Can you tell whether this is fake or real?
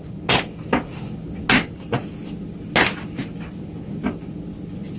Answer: real